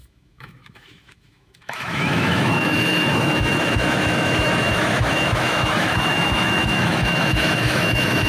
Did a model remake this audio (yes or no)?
yes